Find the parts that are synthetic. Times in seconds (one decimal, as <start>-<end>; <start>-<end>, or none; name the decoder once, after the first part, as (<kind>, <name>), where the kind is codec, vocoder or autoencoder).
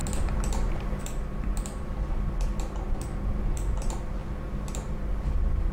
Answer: 1.0-4.2 (vocoder, BigVGAN v2); 4.7-5.7